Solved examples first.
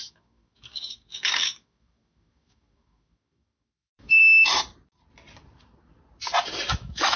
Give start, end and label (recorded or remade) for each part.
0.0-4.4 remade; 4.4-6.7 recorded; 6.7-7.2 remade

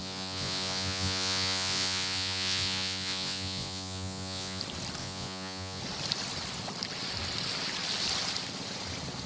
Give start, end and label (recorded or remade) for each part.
0.0-4.6 remade; 4.6-5.0 recorded; 5.0-5.8 remade; 5.8-9.3 recorded

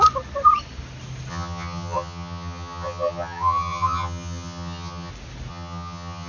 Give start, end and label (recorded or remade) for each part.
0.0-1.3 recorded; 1.3-5.1 remade; 5.1-5.5 recorded; 5.5-6.3 remade

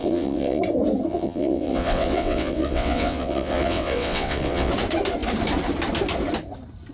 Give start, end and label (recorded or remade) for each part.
0.0-0.6 remade; 0.6-1.1 recorded; 1.1-4.7 remade; 4.7-6.9 recorded

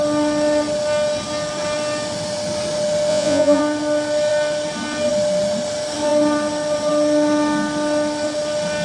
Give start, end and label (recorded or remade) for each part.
0.0-3.1 recorded; 3.1-3.6 remade; 3.6-8.8 recorded

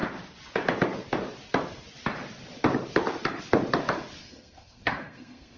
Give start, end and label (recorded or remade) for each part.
0.0-4.2 recorded; 4.2-5.6 remade